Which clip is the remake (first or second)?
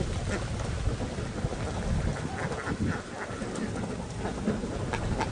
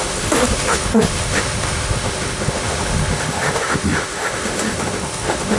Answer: second